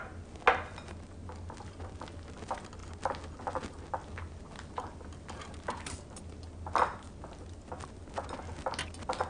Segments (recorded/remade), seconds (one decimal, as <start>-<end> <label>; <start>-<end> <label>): 0.0-9.3 recorded